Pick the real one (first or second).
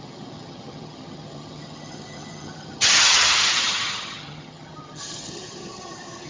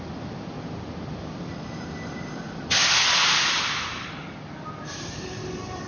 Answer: second